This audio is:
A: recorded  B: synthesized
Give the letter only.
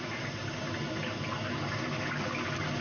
A